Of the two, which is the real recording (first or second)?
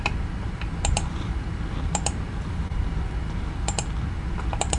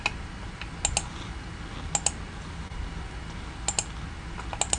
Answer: second